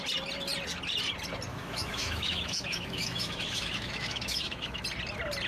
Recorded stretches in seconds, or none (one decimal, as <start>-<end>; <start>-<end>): 0.0-1.5; 4.8-5.5